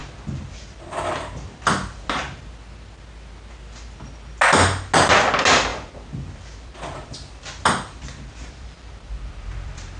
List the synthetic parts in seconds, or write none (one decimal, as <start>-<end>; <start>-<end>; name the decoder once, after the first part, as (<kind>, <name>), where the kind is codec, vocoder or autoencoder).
0.0-1.6 (vocoder, BigVGAN v2); 5.7-10.0